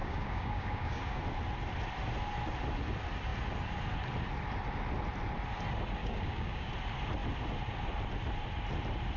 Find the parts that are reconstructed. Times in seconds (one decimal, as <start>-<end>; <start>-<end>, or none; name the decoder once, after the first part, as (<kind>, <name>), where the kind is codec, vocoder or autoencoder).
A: 0.0-1.2 (codec, DAC); 6.0-6.7